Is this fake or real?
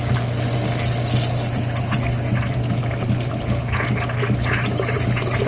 real